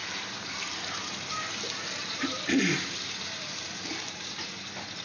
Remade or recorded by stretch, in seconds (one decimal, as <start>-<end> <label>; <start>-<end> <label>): 0.0-5.0 remade